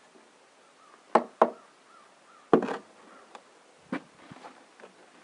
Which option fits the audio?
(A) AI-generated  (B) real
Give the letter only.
B